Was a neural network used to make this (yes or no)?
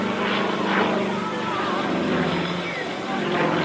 no